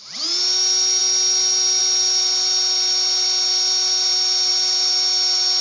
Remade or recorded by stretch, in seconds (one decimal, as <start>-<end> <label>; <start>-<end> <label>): 0.0-5.6 recorded